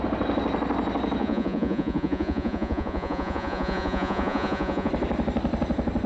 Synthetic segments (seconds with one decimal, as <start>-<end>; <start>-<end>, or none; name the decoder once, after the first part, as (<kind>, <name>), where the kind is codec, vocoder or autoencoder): 1.2-4.9 (vocoder, Vocos)

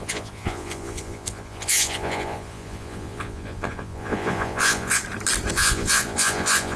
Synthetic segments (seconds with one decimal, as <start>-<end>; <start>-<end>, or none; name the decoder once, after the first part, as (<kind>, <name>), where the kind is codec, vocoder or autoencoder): 0.0-5.0 (vocoder, Vocos); 5.5-6.8